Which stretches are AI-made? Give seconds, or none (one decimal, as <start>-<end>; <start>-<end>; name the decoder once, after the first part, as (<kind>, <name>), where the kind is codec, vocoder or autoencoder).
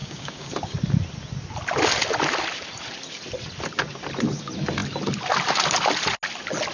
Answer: 0.0-0.5 (codec, DAC)